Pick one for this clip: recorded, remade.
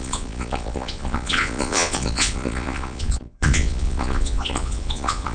remade